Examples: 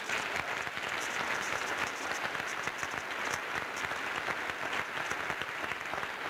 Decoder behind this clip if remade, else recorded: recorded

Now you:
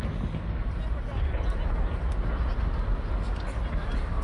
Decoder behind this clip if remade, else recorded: recorded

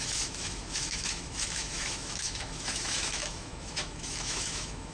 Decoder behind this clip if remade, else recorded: remade, autoencoder, DAC-VAE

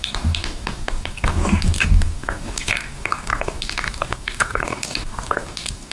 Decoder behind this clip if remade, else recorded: remade, codec, DAC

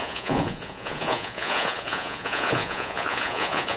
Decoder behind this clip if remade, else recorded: remade, vocoder, Vocos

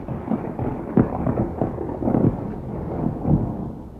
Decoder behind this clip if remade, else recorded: remade, codec, DAC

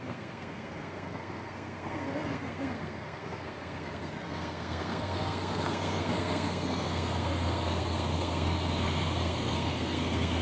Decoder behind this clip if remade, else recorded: remade, codec, SNAC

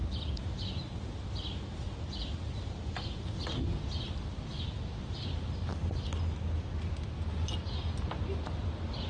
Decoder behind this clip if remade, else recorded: recorded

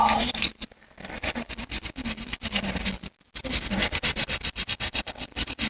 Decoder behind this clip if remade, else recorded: recorded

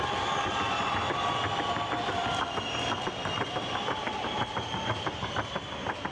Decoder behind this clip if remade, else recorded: recorded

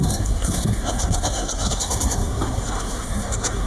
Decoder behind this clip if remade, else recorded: remade, codec, SNAC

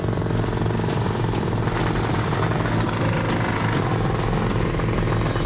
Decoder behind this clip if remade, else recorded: recorded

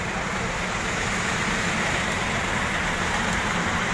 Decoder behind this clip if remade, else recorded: remade, vocoder, BigVGAN v2